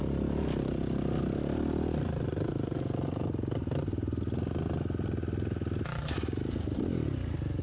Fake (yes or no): no